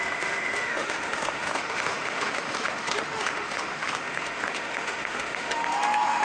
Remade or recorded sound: remade